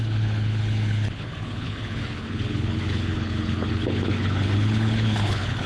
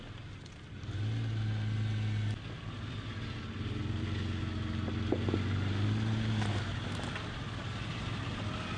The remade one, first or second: first